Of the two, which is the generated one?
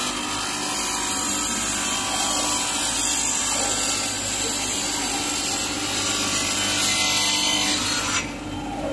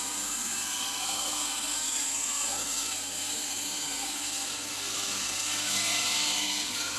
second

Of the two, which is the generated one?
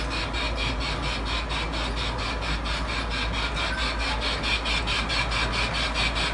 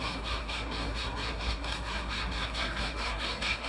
second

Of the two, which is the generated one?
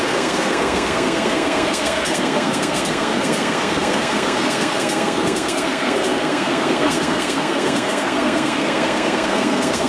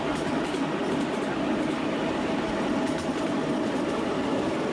first